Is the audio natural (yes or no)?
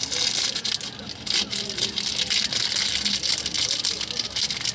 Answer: yes